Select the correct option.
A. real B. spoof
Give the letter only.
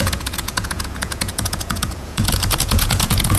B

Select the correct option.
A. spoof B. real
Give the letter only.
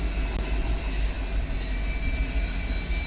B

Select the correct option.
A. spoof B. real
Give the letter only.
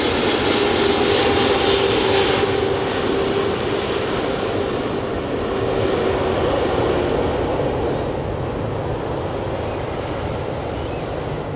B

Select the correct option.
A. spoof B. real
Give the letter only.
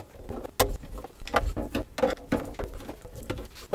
B